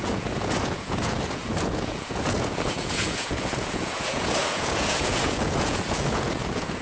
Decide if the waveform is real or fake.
fake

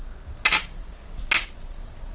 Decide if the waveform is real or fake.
real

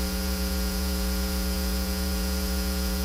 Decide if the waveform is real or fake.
fake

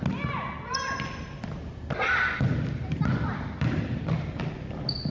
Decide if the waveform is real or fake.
real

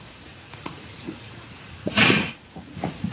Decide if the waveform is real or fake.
fake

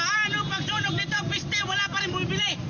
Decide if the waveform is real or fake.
real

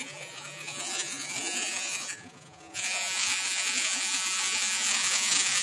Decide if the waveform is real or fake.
fake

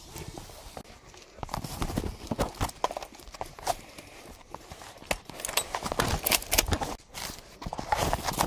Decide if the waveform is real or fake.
real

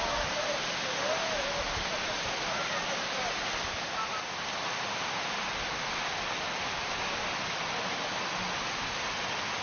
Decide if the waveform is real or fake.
real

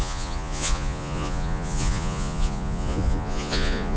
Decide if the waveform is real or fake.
fake